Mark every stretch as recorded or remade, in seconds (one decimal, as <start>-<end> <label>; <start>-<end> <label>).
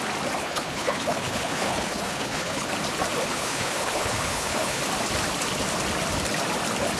0.0-0.4 recorded; 0.4-2.7 remade; 2.7-3.3 recorded; 3.3-4.8 remade; 4.8-7.0 recorded